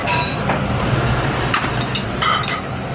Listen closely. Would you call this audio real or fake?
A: real